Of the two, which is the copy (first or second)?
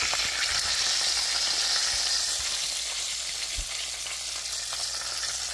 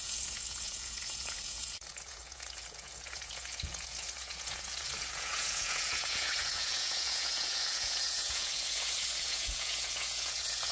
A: second